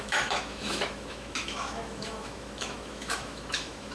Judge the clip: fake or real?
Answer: fake